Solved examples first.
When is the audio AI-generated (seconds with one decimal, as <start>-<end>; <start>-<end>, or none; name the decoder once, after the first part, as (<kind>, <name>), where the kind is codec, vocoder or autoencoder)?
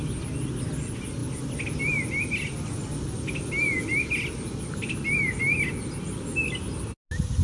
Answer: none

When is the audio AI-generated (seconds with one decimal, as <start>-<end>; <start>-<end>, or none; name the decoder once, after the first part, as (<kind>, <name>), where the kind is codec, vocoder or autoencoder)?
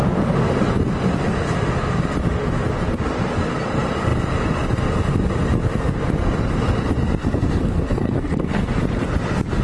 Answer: 7.2-8.8 (codec, SNAC)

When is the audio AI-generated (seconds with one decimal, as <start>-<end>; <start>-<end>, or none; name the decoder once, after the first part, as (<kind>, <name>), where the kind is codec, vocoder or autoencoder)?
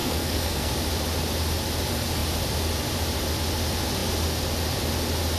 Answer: 0.0-0.7 (codec, SNAC)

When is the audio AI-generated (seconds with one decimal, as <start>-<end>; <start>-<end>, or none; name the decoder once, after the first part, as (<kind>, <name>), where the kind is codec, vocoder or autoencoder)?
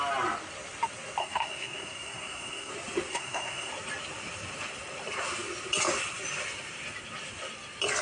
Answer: 1.2-2.7 (codec, SNAC); 3.1-3.7